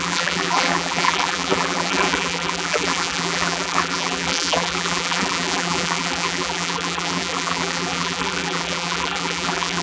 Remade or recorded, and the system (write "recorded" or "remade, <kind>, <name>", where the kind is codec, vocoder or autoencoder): remade, vocoder, BigVGAN v2